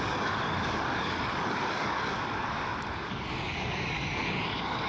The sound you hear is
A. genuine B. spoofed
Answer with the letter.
B